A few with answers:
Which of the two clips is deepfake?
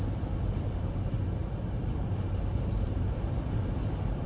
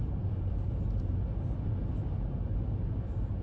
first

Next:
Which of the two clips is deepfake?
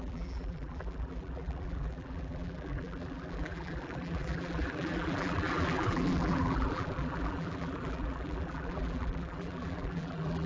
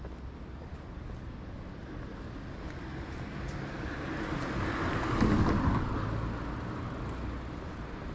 first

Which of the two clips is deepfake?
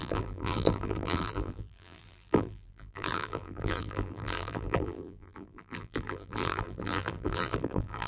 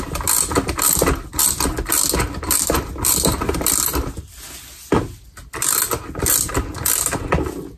first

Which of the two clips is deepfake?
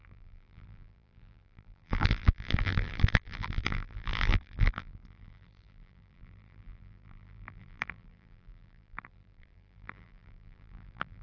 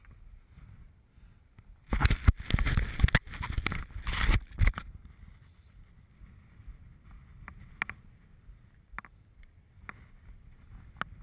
first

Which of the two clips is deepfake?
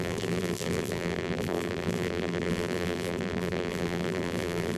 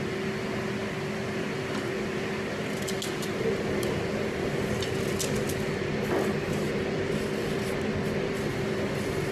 first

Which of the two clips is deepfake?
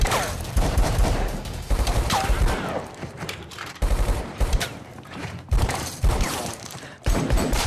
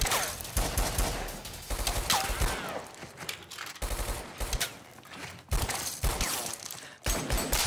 first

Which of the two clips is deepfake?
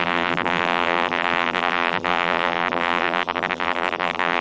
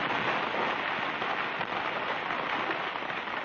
first